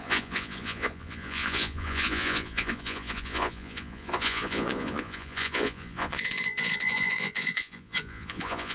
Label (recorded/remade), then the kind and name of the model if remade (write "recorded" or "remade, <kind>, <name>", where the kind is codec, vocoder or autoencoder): remade, vocoder, Vocos